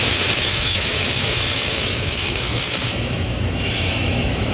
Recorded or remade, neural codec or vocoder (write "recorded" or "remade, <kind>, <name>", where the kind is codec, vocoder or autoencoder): remade, autoencoder, DAC-VAE